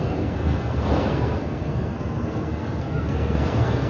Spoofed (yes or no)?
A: yes